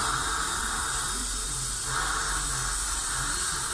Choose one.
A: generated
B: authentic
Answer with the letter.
B